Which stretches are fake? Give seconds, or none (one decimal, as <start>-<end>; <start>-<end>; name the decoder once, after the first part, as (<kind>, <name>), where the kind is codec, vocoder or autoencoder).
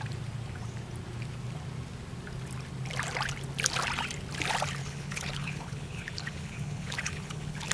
4.8-7.7 (codec, HILCodec)